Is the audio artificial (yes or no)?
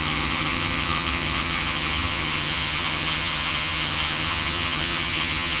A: yes